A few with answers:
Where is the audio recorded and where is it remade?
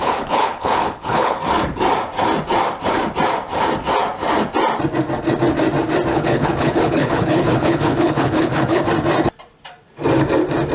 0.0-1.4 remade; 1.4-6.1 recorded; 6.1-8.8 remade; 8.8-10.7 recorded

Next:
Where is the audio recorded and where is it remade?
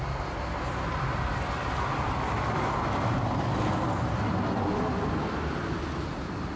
0.0-6.6 recorded